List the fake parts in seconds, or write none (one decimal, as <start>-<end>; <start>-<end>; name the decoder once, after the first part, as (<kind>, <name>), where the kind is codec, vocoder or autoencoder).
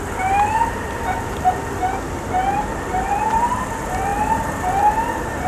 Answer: 2.7-3.6 (vocoder, BigVGAN v2)